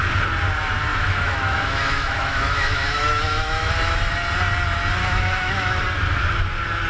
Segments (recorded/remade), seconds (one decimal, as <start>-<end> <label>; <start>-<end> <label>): 0.0-0.9 recorded; 0.9-3.7 remade; 3.7-5.0 recorded; 5.0-5.8 remade; 5.8-6.9 recorded